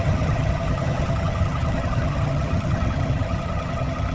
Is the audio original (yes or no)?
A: no